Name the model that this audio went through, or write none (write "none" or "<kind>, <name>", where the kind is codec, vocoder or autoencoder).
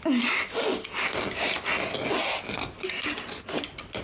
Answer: none